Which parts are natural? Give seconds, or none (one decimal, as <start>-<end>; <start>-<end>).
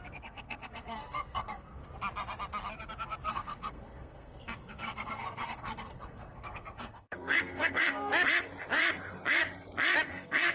1.8-3.3; 8.1-10.0